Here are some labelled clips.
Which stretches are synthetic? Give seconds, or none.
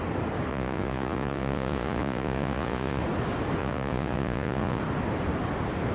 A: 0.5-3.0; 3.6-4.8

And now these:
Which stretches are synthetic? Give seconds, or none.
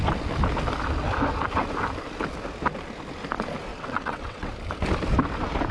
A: 3.7-4.5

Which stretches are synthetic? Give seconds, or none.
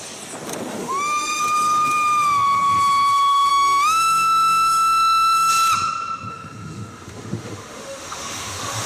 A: 0.7-1.4; 3.5-5.5; 6.3-8.9